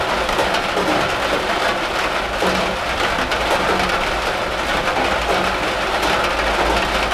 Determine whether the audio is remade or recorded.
recorded